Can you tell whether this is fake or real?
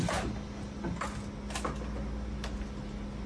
real